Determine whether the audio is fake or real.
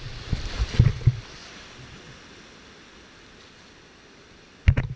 real